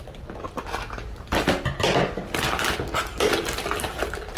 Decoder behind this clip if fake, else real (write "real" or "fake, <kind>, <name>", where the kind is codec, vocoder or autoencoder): real